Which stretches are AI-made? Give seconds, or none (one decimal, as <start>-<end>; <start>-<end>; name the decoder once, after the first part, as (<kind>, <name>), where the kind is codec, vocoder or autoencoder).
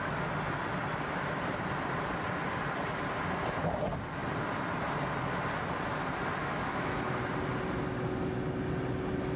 6.4-7.0 (autoencoder, DAC-VAE)